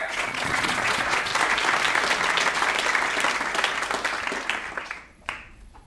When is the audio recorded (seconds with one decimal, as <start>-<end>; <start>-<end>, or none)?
1.3-4.8